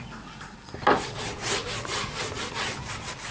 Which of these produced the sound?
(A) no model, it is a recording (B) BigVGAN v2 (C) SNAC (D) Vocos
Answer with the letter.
A